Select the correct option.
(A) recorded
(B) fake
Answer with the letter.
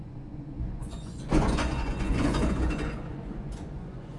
B